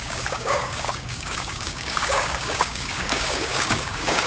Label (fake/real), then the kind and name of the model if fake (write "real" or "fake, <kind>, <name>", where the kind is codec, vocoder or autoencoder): fake, codec, DAC